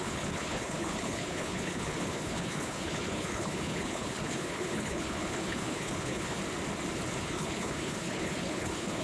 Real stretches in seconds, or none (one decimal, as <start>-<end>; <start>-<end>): 6.4-7.2